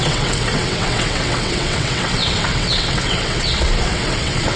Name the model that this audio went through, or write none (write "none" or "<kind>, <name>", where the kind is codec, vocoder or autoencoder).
vocoder, WaveNeXt